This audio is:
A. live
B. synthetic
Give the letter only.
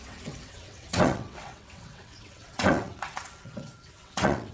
B